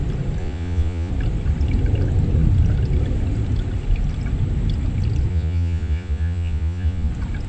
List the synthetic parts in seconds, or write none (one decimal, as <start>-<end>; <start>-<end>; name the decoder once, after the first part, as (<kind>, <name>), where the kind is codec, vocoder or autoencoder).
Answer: 0.4-1.1 (vocoder, Vocos); 5.3-7.1